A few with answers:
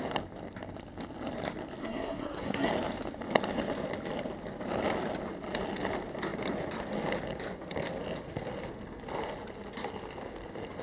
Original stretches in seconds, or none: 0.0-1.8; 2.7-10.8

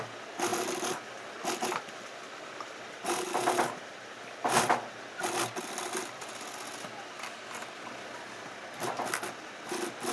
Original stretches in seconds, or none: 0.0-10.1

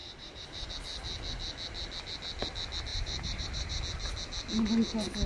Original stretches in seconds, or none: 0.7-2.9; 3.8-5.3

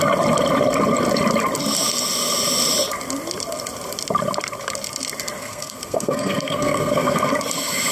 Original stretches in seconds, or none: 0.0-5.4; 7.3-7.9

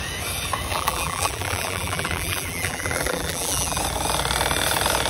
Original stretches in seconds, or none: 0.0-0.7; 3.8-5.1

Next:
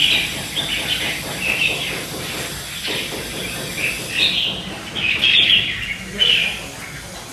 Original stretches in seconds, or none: 0.0-7.3

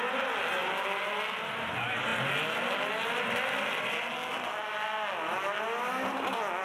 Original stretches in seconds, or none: 0.0-6.6

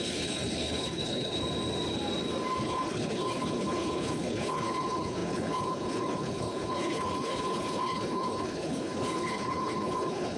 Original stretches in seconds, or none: 1.4-2.6